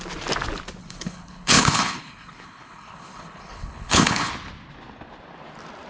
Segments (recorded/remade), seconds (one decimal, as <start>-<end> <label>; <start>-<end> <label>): 0.0-0.8 recorded; 0.8-4.3 remade; 4.3-5.9 recorded